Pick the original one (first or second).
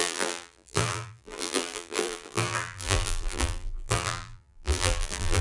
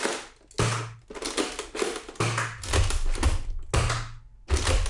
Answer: second